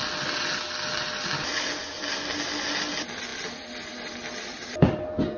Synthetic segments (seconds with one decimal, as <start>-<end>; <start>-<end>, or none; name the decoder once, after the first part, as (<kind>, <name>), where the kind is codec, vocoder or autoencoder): none